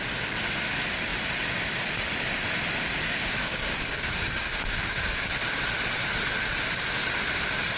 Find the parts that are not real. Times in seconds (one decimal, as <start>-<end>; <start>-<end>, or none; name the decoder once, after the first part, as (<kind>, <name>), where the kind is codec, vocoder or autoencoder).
3.4-5.3 (codec, DAC)